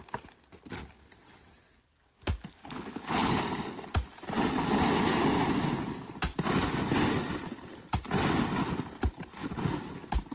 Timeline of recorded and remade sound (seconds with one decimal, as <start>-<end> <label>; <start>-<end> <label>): 0.0-2.6 recorded; 2.6-3.4 remade; 3.4-10.3 recorded